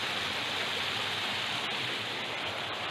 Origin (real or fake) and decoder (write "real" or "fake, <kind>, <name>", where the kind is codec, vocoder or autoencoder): real